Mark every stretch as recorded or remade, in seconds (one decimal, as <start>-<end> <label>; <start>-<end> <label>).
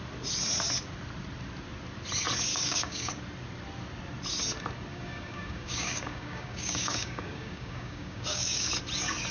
0.0-2.5 recorded; 2.5-3.1 remade; 3.1-4.9 recorded; 4.9-8.7 remade; 8.7-9.3 recorded